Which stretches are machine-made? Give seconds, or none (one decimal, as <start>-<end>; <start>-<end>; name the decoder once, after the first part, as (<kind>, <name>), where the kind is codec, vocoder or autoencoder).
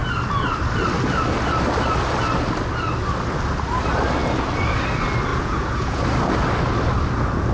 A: 5.3-6.0 (vocoder, Vocos)